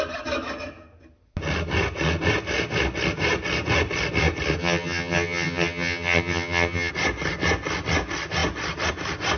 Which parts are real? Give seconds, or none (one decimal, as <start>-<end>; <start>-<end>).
0.0-4.6; 6.9-9.4